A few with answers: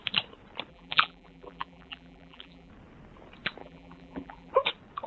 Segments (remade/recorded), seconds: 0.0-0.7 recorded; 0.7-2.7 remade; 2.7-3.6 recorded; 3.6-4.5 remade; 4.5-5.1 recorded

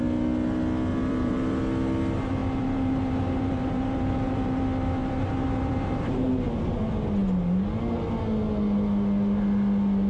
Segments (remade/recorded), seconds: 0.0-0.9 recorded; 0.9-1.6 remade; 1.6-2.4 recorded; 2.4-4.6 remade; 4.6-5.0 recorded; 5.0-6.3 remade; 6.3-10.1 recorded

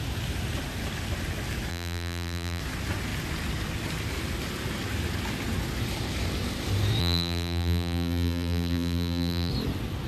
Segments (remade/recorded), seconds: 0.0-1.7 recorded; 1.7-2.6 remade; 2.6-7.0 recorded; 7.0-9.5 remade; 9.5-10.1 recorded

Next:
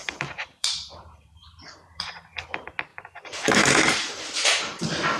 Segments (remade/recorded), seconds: 0.0-2.1 remade; 2.1-2.9 recorded; 2.9-4.8 remade; 4.8-5.2 recorded